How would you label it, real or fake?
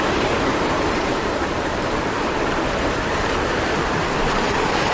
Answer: fake